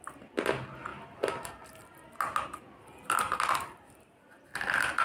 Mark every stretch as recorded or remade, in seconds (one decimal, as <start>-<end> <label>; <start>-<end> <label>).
0.0-5.0 recorded

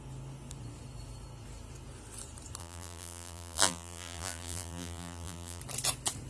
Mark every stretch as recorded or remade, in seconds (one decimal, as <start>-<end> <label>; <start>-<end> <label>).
0.0-2.6 recorded; 2.6-5.6 remade; 5.6-6.3 recorded

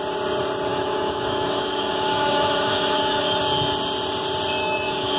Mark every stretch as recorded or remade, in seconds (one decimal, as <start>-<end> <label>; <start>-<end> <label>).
0.0-0.7 recorded; 0.7-3.4 remade; 3.4-4.6 recorded; 4.6-5.2 remade

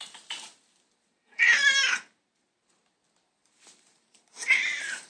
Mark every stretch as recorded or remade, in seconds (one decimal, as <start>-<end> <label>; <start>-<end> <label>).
0.0-1.1 recorded; 1.1-2.8 remade; 2.8-3.4 recorded; 3.4-5.1 remade

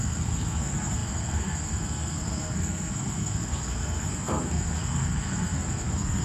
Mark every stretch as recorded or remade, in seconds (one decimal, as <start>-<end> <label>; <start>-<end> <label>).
0.0-6.2 remade

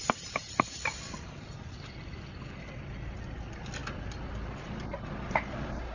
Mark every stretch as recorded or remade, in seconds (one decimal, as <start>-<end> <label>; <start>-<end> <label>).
0.0-5.9 recorded